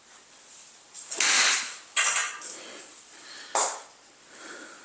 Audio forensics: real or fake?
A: real